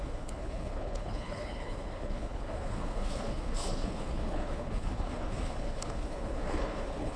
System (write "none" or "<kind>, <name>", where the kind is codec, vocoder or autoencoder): codec, HILCodec